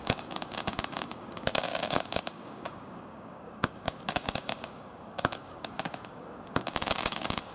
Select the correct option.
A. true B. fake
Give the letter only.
B